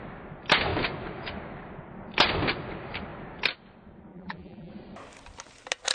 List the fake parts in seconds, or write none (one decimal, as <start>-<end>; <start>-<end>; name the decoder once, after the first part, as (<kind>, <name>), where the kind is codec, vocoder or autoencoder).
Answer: 4.1-4.7 (vocoder, BigVGAN v2)